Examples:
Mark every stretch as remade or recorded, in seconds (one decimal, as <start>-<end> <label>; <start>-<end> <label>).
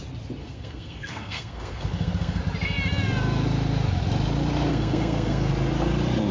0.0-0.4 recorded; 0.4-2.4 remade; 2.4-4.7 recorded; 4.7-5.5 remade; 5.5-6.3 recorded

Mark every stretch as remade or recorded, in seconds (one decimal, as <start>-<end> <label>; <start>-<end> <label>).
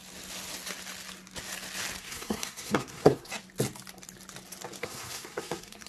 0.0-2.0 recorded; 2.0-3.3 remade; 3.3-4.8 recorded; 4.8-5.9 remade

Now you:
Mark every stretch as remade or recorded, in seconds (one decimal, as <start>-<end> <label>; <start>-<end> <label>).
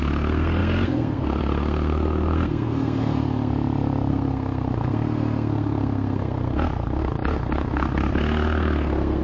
0.0-3.5 remade; 3.5-4.1 recorded; 4.1-9.2 remade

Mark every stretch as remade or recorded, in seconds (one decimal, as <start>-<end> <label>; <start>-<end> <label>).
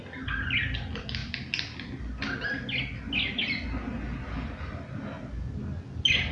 0.0-6.3 recorded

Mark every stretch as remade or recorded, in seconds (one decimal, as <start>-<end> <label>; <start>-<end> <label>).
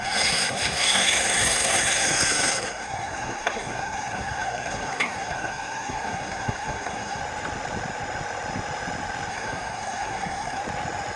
0.0-7.2 remade; 7.2-9.3 recorded; 9.3-10.6 remade; 10.6-11.2 recorded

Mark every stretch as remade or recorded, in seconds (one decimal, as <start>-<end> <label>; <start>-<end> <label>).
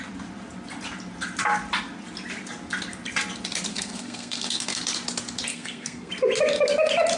0.0-3.7 recorded; 3.7-4.8 remade; 4.8-5.5 recorded; 5.5-6.1 remade; 6.1-7.2 recorded